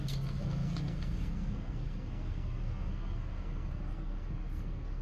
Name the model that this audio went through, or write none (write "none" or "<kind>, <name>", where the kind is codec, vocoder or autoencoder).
codec, SNAC